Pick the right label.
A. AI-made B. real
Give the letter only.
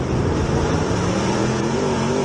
A